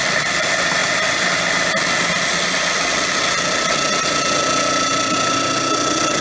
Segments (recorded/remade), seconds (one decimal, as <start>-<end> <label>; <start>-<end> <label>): 0.0-6.2 recorded